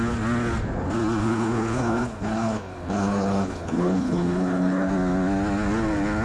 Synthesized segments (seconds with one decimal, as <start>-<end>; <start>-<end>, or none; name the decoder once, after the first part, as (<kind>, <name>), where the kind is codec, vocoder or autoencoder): 1.2-4.9 (codec, HILCodec)